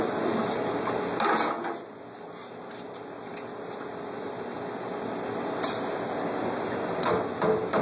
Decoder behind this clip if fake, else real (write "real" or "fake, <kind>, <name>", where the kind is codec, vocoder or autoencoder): real